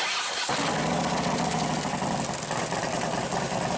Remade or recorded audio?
recorded